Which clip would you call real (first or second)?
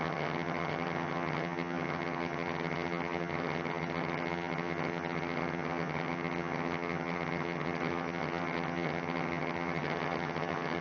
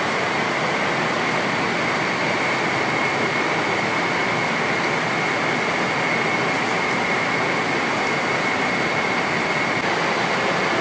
second